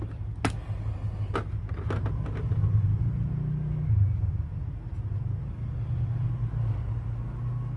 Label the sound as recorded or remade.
recorded